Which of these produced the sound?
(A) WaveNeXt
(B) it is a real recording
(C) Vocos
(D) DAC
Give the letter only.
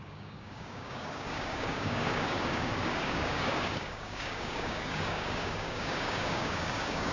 D